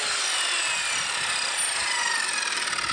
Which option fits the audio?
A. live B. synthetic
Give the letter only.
A